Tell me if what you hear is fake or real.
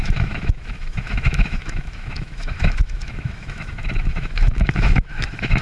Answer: fake